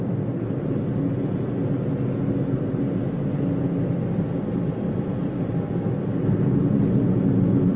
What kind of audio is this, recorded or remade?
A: recorded